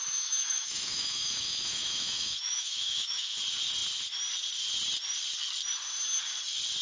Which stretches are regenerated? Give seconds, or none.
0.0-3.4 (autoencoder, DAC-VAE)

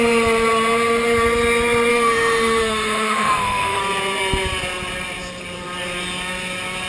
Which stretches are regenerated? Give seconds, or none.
1.9-3.8 (autoencoder, DAC-VAE)

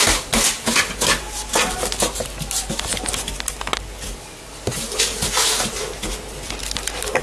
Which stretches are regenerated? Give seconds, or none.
none

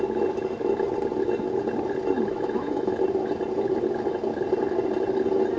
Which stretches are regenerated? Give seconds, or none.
2.3-3.0 (autoencoder, DAC-VAE)

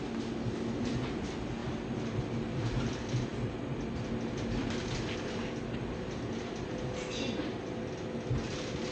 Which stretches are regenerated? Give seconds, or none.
none

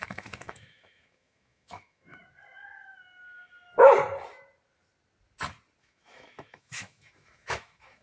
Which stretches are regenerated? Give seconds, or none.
0.0-2.2 (autoencoder, DAC-VAE); 5.8-8.0

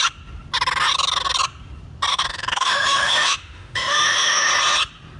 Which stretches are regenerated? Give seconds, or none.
2.1-4.5 (autoencoder, DAC-VAE)